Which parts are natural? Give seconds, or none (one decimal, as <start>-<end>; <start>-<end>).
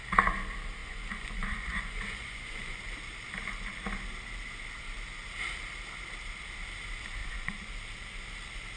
0.0-0.8; 2.8-7.2; 7.7-8.8